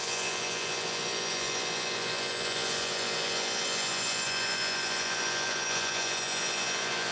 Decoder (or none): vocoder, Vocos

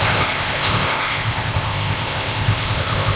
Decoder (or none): codec, ZipCodec